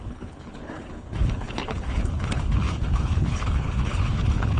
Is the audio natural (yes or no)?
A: no